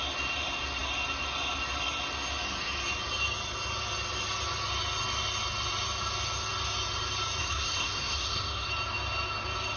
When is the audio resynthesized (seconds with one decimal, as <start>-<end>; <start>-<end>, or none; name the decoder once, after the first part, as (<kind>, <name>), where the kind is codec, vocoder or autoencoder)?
7.4-8.7 (codec, SNAC)